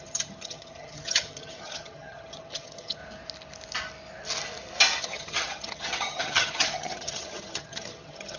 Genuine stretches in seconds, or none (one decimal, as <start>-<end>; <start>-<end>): 3.0-5.0